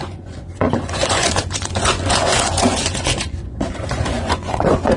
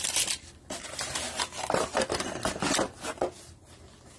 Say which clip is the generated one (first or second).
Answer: first